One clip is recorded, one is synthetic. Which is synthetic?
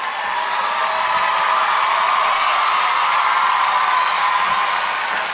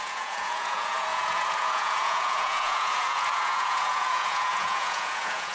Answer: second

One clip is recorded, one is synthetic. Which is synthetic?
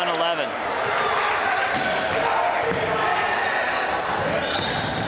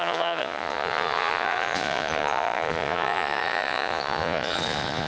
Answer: second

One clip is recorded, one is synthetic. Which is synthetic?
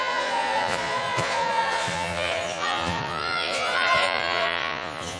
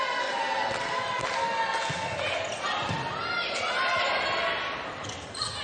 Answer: first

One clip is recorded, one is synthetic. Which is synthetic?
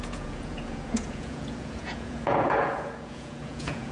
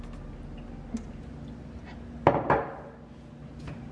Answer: first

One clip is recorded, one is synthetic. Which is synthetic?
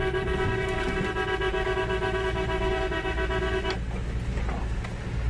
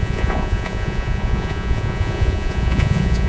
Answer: second